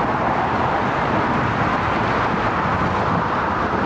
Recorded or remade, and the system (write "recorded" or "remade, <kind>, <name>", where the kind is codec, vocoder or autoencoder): recorded